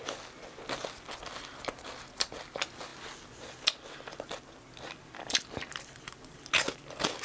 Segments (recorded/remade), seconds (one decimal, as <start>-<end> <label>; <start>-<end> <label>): 0.0-7.2 recorded